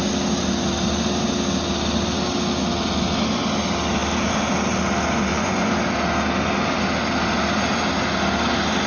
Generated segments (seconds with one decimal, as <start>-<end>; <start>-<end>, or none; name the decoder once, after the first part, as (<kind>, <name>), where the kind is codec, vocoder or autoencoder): 5.3-5.8 (vocoder, Vocos)